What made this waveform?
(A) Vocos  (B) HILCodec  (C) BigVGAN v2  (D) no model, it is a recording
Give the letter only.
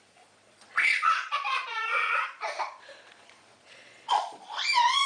A